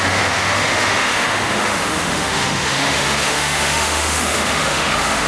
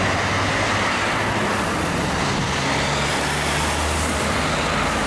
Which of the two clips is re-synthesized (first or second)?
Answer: first